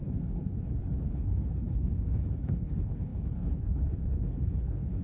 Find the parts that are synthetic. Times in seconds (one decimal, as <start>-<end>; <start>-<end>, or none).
0.0-5.0